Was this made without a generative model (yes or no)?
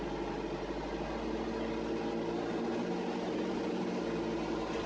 yes